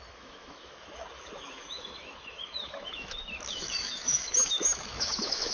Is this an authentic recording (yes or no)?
no